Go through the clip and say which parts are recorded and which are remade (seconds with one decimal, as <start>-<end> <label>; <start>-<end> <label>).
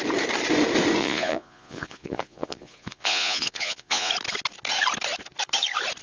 0.0-1.0 recorded; 1.0-4.1 remade; 4.1-6.0 recorded